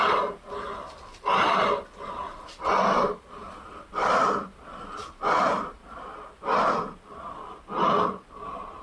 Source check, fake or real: real